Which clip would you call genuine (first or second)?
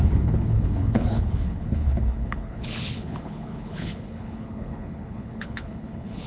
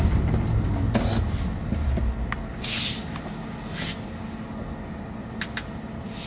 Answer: second